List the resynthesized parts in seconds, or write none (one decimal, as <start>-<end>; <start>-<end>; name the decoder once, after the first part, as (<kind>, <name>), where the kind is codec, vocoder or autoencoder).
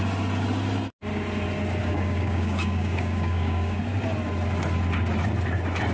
1.8-3.8 (codec, DAC)